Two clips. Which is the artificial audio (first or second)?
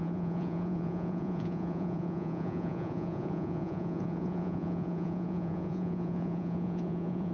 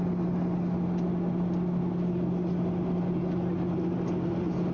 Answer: first